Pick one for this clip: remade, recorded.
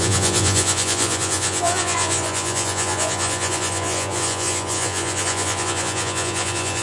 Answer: remade